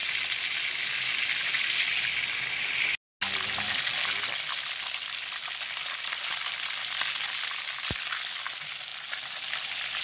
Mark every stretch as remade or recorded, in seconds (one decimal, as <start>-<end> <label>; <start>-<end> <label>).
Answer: 0.0-10.0 recorded